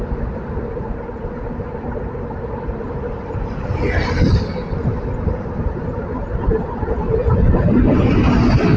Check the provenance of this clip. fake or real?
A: real